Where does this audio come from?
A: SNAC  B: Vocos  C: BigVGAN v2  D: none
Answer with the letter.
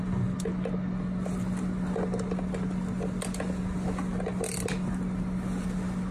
D